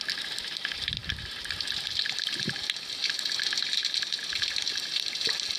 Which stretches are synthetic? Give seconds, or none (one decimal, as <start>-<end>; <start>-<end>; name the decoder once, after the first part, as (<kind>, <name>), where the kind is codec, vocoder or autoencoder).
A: none